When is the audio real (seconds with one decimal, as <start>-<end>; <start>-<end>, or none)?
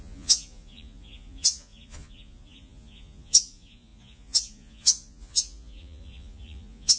none